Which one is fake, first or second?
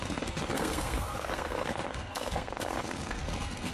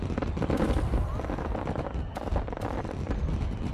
first